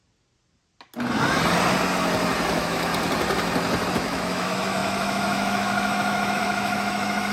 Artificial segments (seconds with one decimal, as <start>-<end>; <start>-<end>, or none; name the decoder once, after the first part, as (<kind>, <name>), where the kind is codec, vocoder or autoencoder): 2.5-2.9 (autoencoder, DAC-VAE); 3.9-7.3